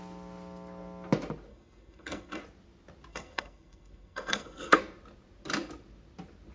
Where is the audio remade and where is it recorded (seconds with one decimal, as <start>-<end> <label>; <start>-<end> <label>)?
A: 0.0-1.5 recorded; 1.5-2.4 remade; 2.4-3.1 recorded; 3.1-4.8 remade; 4.8-6.5 recorded